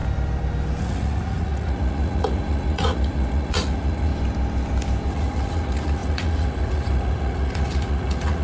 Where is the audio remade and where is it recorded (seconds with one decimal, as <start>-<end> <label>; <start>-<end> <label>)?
0.0-0.8 recorded; 0.8-4.1 remade; 4.1-5.1 recorded; 5.1-8.4 remade